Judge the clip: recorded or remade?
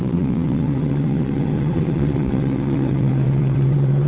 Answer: remade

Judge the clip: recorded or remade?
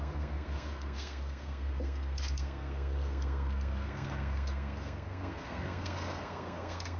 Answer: remade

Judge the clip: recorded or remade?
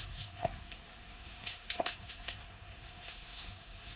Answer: remade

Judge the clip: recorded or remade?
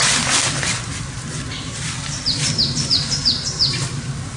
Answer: recorded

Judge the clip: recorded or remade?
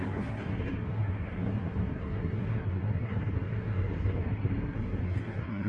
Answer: remade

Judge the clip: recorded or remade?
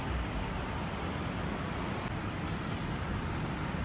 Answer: recorded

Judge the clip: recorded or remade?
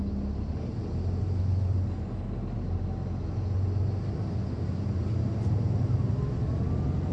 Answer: recorded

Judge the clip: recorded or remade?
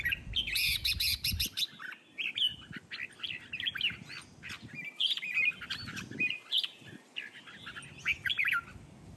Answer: recorded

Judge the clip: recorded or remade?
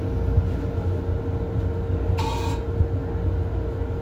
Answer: recorded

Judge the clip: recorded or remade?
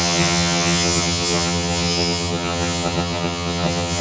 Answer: remade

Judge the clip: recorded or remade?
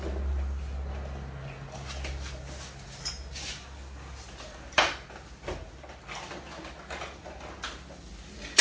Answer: recorded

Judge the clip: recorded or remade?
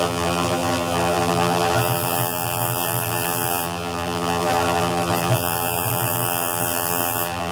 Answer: remade